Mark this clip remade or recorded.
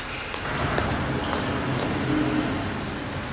recorded